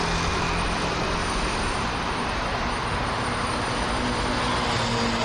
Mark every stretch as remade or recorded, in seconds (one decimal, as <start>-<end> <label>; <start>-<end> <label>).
0.0-1.2 recorded; 1.2-4.3 remade; 4.3-5.2 recorded

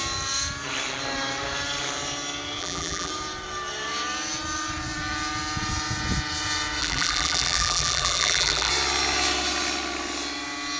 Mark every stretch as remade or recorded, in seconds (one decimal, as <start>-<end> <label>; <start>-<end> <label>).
0.0-2.6 recorded; 2.6-3.1 remade; 3.1-6.8 recorded; 6.8-8.7 remade; 8.7-10.8 recorded

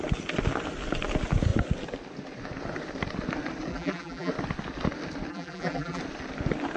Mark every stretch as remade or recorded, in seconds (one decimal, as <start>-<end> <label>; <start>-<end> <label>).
0.0-3.7 recorded; 3.7-4.3 remade; 4.3-5.3 recorded; 5.3-6.0 remade; 6.0-6.8 recorded